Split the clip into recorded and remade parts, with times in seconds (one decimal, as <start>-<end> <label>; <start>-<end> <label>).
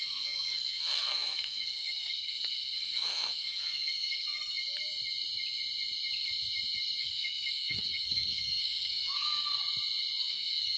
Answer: 0.0-4.6 remade; 4.6-7.0 recorded; 7.0-9.6 remade; 9.6-10.2 recorded; 10.2-10.8 remade